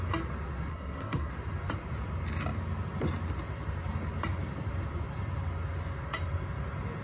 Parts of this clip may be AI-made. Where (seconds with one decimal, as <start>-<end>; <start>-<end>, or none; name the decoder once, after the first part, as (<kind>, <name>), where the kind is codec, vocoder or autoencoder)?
0.7-1.3 (codec, SNAC)